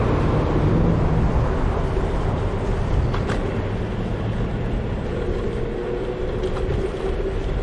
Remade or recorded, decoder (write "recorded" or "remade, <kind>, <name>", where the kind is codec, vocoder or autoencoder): recorded